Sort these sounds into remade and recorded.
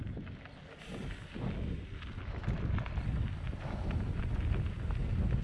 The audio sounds recorded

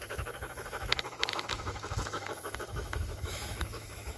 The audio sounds remade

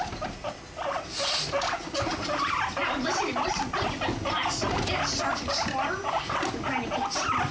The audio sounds recorded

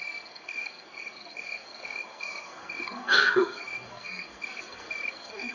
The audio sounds remade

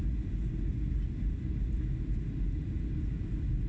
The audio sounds recorded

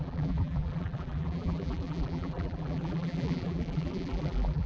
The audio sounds remade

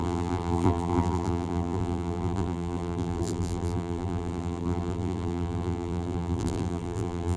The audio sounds remade